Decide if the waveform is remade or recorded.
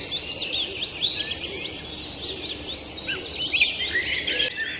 recorded